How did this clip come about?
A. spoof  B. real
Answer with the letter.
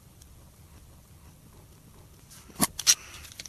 B